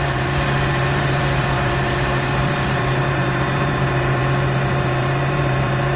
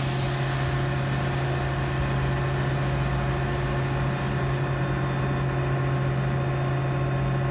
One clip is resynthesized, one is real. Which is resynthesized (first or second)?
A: first